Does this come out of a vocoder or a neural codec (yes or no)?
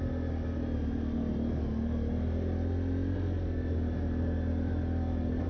no